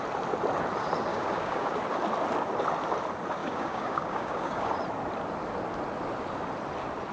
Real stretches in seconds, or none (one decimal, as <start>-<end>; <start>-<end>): 0.0-1.1; 1.8-3.4; 4.7-7.1